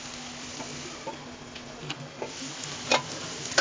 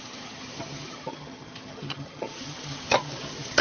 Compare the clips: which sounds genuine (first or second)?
first